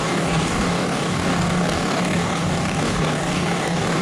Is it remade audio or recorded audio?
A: remade